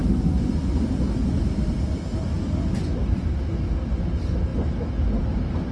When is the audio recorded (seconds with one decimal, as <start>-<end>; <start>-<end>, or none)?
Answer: 0.0-5.7